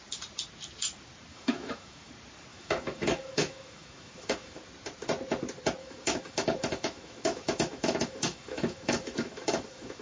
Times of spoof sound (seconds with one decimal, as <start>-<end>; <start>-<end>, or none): 1.3-2.1; 2.5-4.6; 5.8-10.0